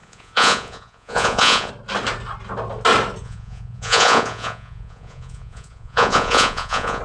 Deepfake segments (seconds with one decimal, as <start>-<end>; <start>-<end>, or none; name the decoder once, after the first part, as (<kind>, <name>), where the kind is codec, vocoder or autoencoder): 0.0-1.7 (vocoder, Vocos); 3.2-7.0